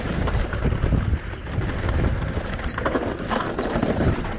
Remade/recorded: remade